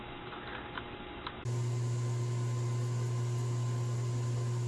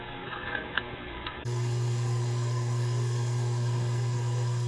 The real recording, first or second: first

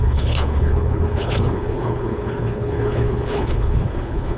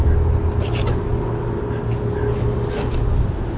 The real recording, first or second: second